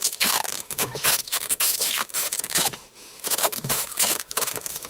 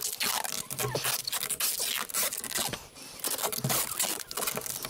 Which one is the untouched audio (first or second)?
second